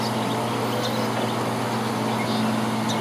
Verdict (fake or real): real